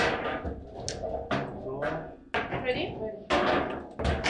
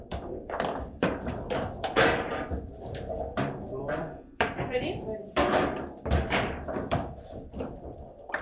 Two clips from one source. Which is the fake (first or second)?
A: second